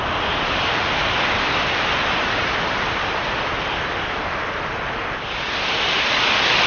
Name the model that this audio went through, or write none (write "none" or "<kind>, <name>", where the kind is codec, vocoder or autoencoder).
none